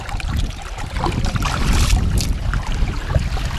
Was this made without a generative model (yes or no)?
yes